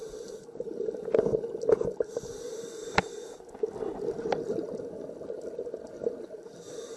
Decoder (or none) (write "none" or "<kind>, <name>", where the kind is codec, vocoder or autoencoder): none